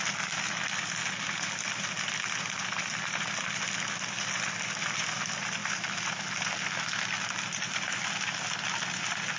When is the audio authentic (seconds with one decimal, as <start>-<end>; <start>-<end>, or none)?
0.0-9.4